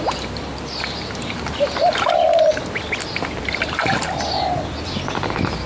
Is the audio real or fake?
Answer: real